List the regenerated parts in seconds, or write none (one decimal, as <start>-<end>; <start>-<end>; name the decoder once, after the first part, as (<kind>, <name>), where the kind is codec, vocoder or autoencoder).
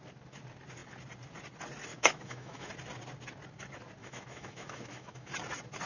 1.9-2.7 (autoencoder, DAC-VAE); 4.0-5.3